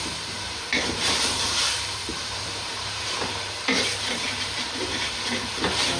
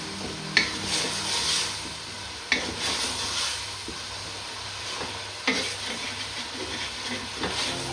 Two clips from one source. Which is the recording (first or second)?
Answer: second